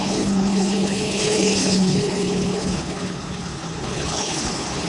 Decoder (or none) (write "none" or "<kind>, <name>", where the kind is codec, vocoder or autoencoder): codec, HILCodec